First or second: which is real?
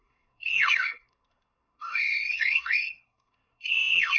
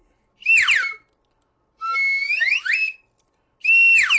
second